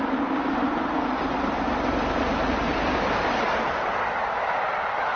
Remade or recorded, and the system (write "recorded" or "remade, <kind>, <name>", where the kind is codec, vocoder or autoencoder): recorded